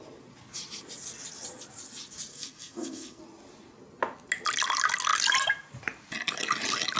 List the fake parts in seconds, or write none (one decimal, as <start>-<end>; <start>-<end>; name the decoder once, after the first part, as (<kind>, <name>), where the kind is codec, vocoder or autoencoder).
2.3-3.2 (codec, SNAC)